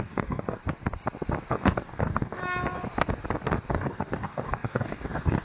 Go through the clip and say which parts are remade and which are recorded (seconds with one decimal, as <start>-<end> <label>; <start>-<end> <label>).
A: 0.0-0.6 remade; 0.6-1.5 recorded; 1.5-2.4 remade; 2.4-3.7 recorded; 3.7-5.4 remade